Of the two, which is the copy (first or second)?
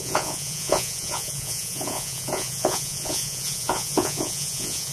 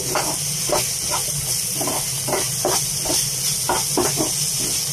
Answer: first